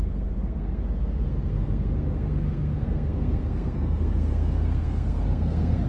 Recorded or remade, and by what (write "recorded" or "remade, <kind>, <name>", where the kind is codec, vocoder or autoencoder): remade, codec, SNAC